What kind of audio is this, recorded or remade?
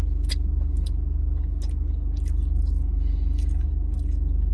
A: recorded